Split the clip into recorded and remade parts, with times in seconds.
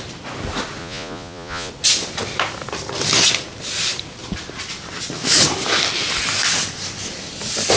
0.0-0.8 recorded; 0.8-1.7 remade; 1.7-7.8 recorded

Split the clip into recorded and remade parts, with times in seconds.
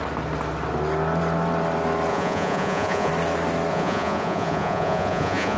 0.0-2.1 recorded; 2.1-3.1 remade; 3.1-3.7 recorded; 3.7-5.6 remade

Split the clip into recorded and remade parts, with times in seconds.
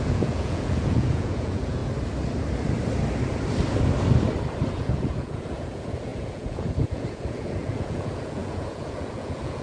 0.0-1.8 remade; 1.8-4.7 recorded; 4.7-9.6 remade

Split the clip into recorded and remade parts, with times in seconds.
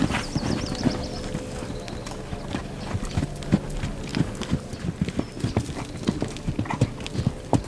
0.0-7.7 recorded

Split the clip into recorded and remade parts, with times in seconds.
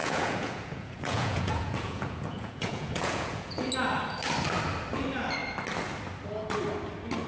0.0-3.7 remade; 3.7-7.3 recorded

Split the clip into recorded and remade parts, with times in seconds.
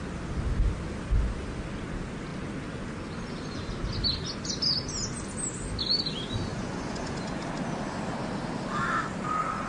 0.0-6.5 recorded; 6.5-7.4 remade; 7.4-9.7 recorded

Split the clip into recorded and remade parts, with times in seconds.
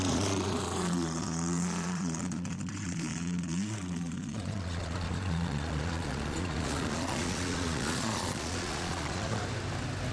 0.0-9.4 remade; 9.4-10.1 recorded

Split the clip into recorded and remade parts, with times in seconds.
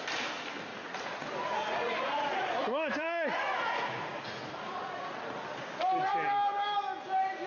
0.0-0.7 recorded; 0.7-5.1 remade; 5.1-7.5 recorded